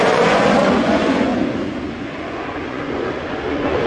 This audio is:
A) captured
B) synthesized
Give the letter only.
B